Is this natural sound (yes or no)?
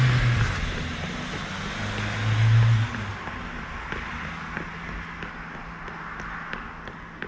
yes